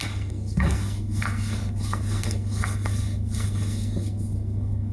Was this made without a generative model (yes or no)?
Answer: no